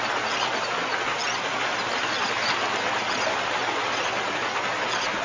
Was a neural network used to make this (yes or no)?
no